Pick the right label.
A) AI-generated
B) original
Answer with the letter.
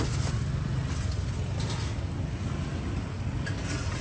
B